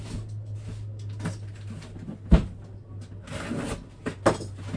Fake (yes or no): no